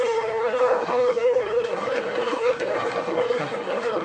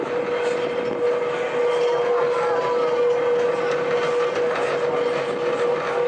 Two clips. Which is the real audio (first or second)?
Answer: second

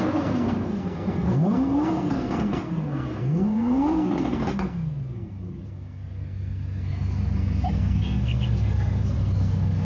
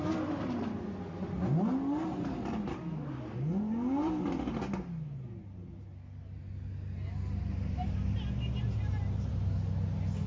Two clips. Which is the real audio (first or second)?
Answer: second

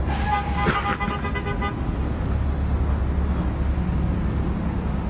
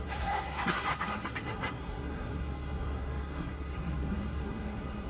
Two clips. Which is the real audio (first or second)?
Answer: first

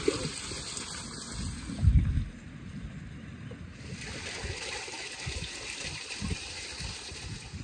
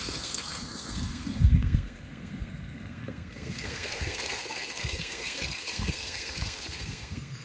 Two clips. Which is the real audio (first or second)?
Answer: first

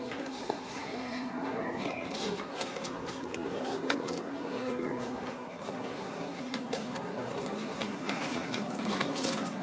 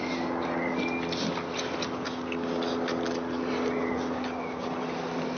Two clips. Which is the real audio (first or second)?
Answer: second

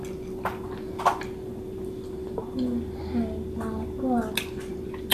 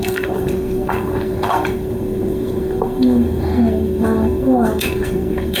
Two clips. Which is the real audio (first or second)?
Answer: first